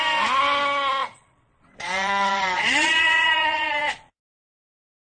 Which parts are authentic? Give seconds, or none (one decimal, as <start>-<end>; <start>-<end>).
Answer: 0.0-1.0; 4.1-5.1